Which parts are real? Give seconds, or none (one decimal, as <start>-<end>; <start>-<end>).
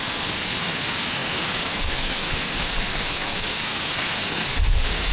none